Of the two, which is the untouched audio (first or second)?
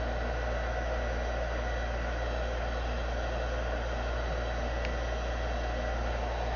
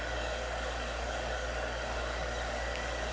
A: first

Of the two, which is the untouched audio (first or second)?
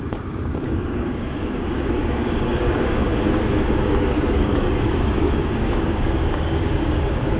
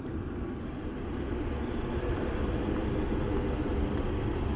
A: second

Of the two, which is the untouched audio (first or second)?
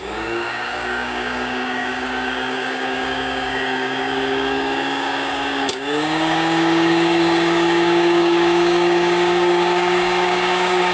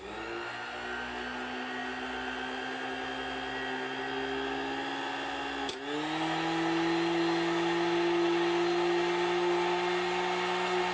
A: second